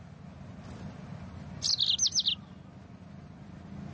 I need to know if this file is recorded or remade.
recorded